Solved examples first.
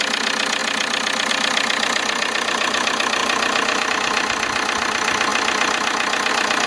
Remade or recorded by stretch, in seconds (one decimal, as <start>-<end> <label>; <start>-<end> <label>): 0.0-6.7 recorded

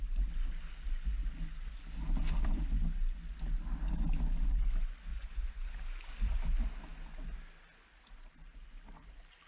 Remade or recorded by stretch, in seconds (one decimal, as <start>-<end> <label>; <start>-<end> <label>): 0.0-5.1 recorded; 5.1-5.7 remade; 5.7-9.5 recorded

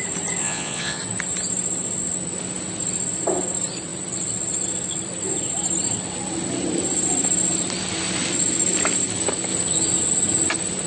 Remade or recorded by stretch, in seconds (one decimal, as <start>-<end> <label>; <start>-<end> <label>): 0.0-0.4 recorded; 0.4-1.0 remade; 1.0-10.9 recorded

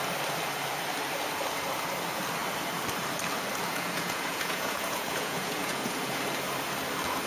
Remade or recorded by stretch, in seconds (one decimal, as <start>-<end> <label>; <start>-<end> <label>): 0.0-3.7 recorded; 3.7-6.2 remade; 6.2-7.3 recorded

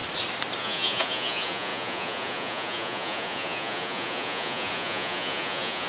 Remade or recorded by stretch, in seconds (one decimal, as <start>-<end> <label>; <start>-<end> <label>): 0.0-0.6 recorded; 0.6-5.9 remade

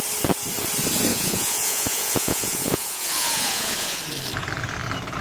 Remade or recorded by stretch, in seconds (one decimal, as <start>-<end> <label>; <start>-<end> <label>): 0.0-1.1 recorded; 1.1-4.0 remade; 4.0-5.2 recorded

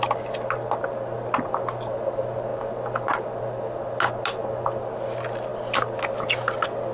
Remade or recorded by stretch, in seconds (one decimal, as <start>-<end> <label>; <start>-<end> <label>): 0.0-6.9 recorded